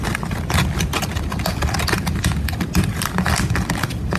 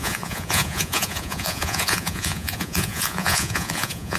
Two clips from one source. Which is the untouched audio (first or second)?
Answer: first